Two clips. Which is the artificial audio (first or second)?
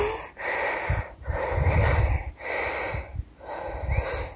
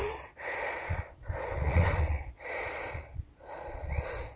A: second